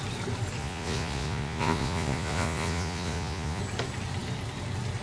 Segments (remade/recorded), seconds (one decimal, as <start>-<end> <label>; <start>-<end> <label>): 0.0-0.6 recorded; 0.6-3.6 remade; 3.6-5.0 recorded